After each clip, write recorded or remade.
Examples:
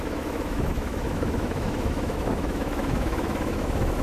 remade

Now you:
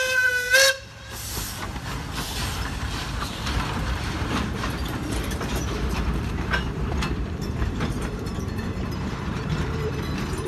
remade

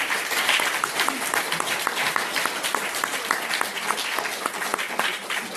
recorded